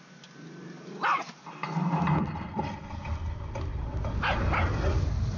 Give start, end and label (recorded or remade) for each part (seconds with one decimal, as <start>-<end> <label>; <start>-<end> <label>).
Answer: 0.0-5.4 recorded